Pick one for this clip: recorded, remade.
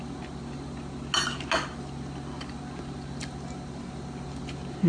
recorded